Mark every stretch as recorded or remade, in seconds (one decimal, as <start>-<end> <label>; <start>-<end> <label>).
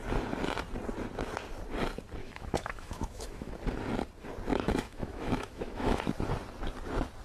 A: 0.0-2.2 recorded; 2.2-3.5 remade; 3.5-4.5 recorded; 4.5-6.0 remade; 6.0-7.2 recorded